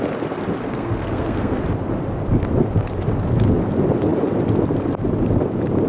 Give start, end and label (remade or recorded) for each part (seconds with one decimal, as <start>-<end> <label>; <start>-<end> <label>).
0.0-0.6 recorded; 0.6-1.6 remade; 1.6-5.9 recorded